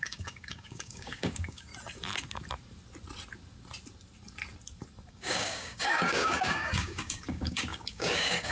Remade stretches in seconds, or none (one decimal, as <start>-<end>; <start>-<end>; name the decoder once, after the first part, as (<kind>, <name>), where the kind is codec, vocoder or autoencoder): 0.0-1.7 (codec, DAC); 5.1-8.5